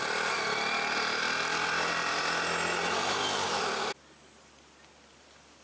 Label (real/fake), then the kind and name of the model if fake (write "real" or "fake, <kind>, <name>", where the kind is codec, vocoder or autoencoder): real